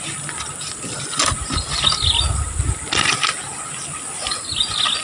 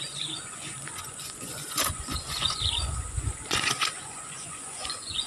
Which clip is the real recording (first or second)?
first